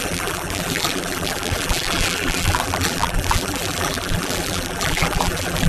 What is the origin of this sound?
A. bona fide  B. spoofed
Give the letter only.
B